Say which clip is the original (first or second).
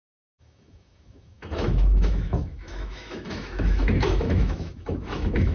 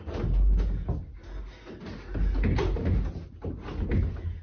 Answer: second